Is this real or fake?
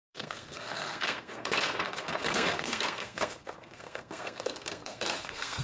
fake